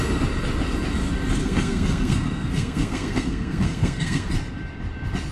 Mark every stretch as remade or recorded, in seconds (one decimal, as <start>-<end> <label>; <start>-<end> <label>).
0.0-1.4 recorded; 1.4-4.3 remade; 4.3-5.3 recorded